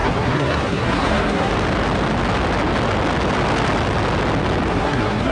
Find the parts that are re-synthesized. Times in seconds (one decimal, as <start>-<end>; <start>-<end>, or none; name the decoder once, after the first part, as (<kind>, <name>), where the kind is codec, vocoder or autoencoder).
0.0-1.5 (codec, SNAC); 4.7-5.3